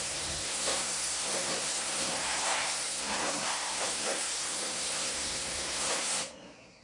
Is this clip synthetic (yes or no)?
yes